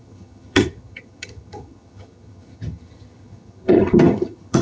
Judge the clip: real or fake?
fake